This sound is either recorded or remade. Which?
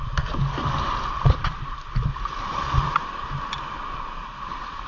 recorded